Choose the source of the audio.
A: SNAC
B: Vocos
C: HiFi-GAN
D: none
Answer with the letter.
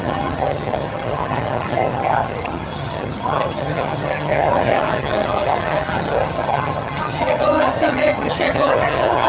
C